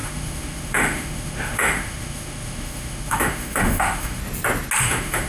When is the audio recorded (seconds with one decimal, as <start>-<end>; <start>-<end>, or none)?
4.2-4.8